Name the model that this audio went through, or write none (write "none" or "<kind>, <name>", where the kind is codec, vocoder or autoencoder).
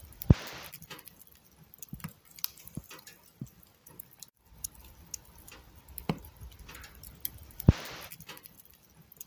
none